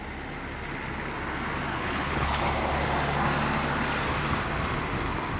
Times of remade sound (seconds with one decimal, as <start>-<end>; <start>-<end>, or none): 1.7-2.4